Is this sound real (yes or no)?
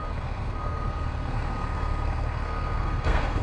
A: no